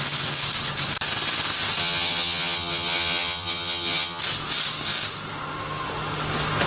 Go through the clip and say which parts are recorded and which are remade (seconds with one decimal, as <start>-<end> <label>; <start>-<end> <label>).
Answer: 0.0-1.8 recorded; 1.8-4.2 remade; 4.2-6.7 recorded